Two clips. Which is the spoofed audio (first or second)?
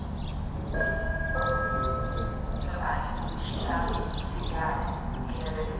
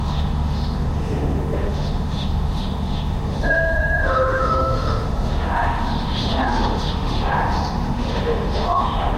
second